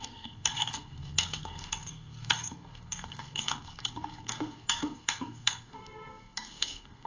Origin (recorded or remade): remade